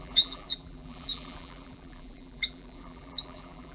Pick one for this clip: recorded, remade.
remade